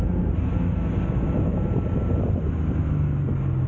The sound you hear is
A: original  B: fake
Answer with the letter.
A